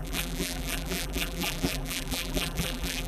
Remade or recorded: remade